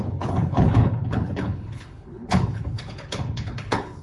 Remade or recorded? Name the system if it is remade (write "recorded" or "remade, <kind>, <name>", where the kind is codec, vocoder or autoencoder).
remade, codec, HILCodec